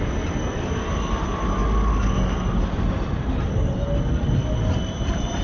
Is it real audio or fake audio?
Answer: real